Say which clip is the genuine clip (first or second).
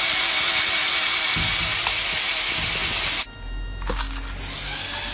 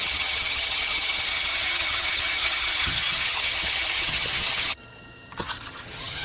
first